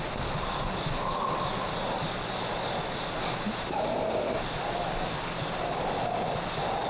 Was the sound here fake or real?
real